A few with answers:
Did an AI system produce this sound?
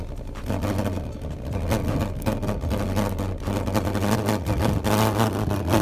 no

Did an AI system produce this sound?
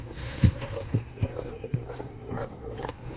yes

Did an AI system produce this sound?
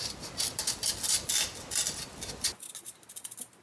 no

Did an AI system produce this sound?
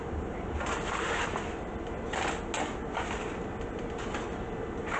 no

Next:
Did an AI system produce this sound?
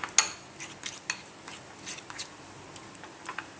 no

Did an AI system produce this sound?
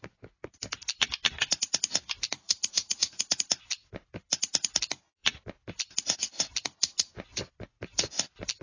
no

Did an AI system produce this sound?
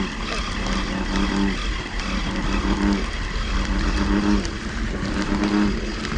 no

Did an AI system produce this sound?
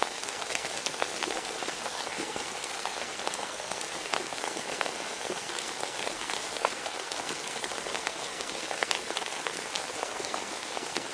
yes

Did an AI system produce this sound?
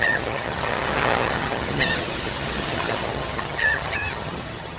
yes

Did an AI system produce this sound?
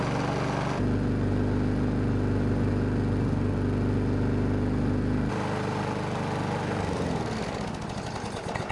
no